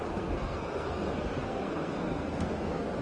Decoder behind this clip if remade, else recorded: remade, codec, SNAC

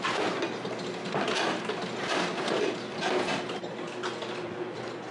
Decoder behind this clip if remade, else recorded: recorded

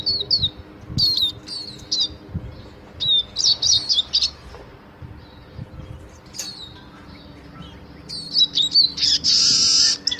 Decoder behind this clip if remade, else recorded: recorded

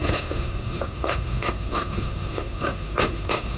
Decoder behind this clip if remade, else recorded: remade, codec, SNAC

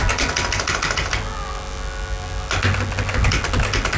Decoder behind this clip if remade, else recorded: recorded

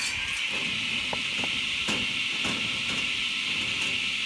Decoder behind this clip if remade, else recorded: recorded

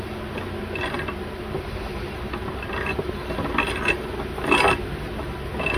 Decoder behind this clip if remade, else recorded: recorded